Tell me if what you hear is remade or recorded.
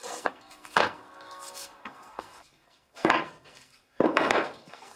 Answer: remade